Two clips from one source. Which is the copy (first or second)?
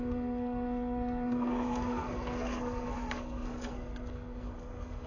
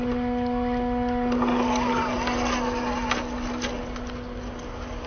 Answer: first